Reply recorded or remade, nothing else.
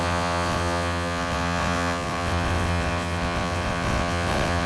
remade